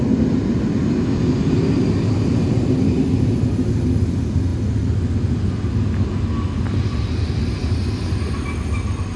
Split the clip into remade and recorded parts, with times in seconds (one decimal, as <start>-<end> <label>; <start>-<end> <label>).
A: 0.0-9.2 recorded

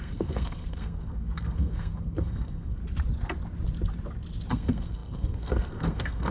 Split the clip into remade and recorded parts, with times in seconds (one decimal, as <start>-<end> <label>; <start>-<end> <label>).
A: 0.0-2.8 remade; 2.8-4.5 recorded; 4.5-6.3 remade

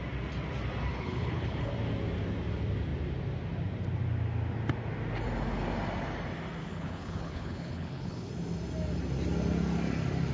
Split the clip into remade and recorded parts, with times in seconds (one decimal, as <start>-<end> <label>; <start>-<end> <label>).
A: 0.0-0.9 recorded; 0.9-1.7 remade; 1.7-6.6 recorded; 6.6-8.3 remade; 8.3-10.3 recorded